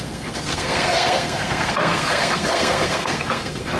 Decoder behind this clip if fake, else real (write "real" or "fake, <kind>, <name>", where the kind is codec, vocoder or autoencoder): fake, codec, SNAC